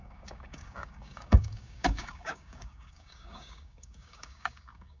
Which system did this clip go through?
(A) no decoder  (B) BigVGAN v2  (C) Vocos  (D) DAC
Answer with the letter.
D